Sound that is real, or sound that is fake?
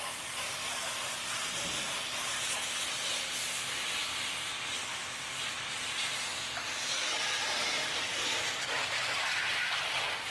real